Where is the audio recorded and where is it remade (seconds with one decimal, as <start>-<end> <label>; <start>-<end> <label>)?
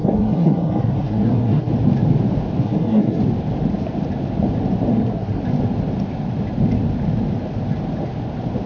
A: 0.0-1.7 remade; 1.7-2.6 recorded; 2.6-3.2 remade; 3.2-4.9 recorded; 4.9-5.4 remade; 5.4-8.7 recorded